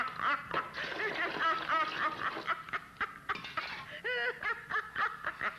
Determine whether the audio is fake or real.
real